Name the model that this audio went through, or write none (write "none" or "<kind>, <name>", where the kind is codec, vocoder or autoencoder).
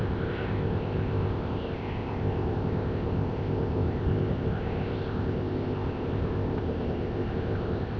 codec, ZipCodec